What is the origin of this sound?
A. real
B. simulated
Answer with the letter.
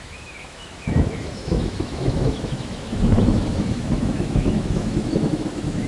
B